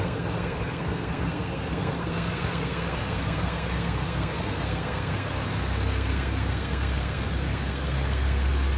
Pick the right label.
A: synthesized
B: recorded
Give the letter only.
A